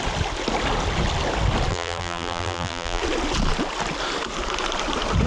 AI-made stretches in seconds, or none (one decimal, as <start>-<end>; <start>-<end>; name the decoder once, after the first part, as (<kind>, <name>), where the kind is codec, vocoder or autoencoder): 1.7-3.0 (vocoder, BigVGAN v2)